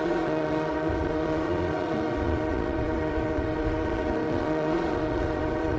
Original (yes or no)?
no